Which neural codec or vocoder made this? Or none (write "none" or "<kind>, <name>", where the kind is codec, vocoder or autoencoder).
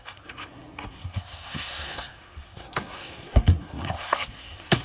codec, SNAC